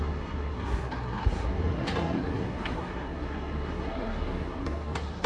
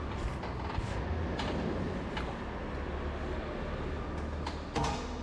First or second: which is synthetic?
first